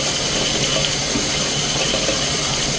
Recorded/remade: recorded